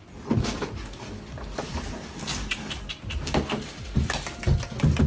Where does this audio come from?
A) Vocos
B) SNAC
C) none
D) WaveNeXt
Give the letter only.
C